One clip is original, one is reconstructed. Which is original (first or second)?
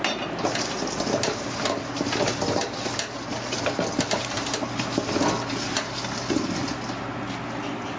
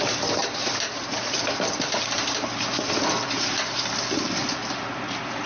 first